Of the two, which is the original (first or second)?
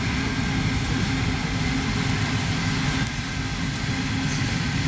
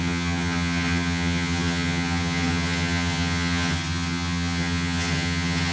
first